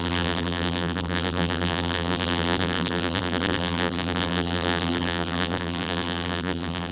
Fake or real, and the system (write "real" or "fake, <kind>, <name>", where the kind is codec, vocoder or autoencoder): fake, vocoder, BigVGAN v2